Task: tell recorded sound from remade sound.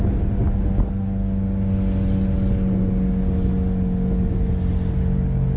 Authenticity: recorded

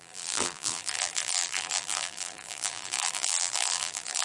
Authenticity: remade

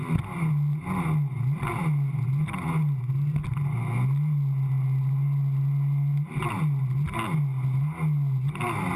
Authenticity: recorded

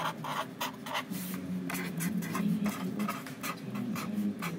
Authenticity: recorded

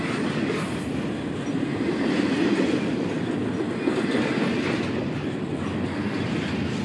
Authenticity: recorded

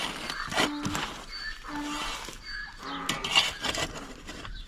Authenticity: recorded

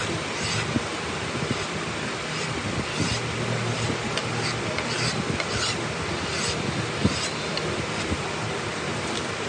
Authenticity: remade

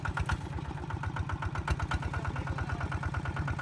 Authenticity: recorded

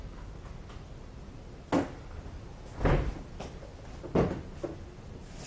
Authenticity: recorded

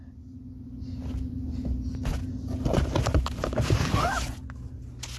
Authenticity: recorded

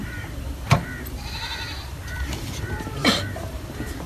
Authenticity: remade